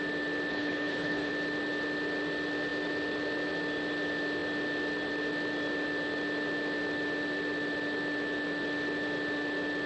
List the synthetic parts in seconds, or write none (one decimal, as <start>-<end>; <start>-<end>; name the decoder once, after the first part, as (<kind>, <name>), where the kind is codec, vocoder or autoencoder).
0.5-1.3 (codec, HILCodec)

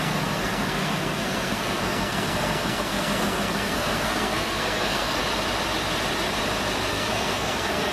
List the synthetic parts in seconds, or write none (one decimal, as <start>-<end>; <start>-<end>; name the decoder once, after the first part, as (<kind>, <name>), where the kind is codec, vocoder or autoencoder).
0.0-5.2 (codec, SNAC); 6.9-7.9

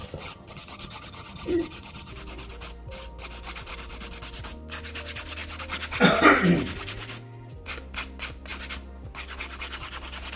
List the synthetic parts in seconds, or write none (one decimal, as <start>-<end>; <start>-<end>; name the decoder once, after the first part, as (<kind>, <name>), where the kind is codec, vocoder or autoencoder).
0.0-2.1 (vocoder, HiFi-GAN)

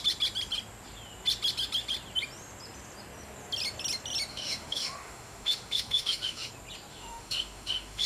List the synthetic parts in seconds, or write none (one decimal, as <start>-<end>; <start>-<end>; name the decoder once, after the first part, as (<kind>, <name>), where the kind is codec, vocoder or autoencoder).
4.3-6.5 (autoencoder, DAC-VAE); 6.9-8.1

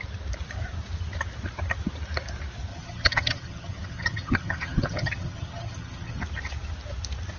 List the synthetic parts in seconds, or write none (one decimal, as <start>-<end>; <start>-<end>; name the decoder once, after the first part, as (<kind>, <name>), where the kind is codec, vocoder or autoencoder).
2.7-6.2 (vocoder, HiFi-GAN)

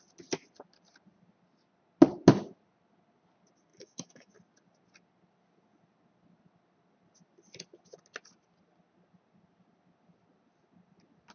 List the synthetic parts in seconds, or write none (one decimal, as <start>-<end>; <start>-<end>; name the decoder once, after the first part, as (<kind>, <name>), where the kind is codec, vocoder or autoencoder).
3.7-4.3 (autoencoder, DAC-VAE)